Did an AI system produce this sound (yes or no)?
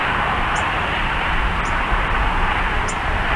no